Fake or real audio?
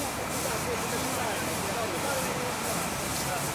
real